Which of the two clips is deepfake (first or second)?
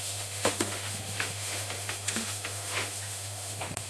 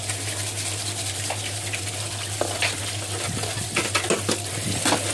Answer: first